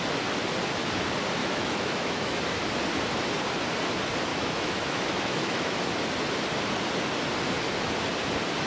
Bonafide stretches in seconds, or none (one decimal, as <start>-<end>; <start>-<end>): 0.0-1.4; 2.4-4.3; 5.8-8.7